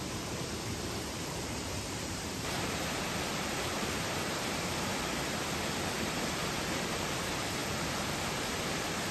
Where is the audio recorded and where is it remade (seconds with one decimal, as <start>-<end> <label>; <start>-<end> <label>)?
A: 0.0-4.9 remade; 4.9-6.9 recorded; 6.9-9.1 remade